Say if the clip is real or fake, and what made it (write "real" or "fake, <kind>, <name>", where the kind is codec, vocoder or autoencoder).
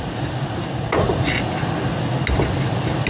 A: real